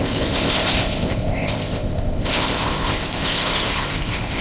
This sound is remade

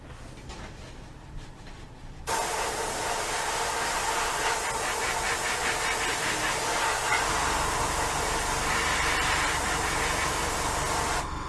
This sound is recorded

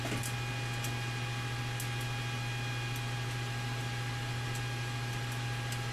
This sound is recorded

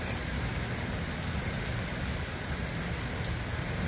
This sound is recorded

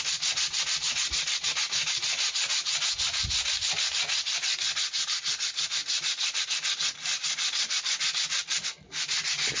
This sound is recorded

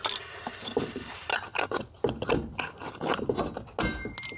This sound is recorded